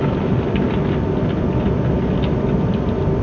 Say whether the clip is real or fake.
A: real